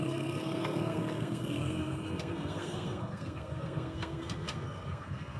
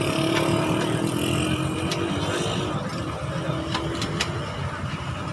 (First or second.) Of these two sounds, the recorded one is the second